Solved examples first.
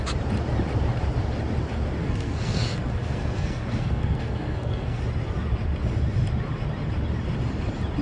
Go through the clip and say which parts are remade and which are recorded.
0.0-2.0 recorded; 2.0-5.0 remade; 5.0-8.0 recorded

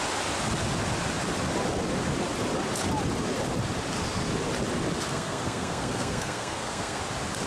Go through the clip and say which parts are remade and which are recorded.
0.0-5.1 recorded; 5.1-7.0 remade; 7.0-7.5 recorded

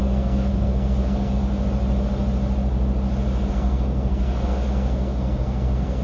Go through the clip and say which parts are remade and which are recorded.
0.0-1.4 remade; 1.4-3.5 recorded; 3.5-6.0 remade

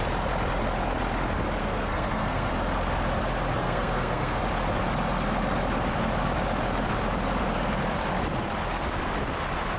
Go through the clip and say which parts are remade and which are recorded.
0.0-1.6 recorded; 1.6-2.5 remade; 2.5-3.6 recorded; 3.6-4.4 remade; 4.4-9.8 recorded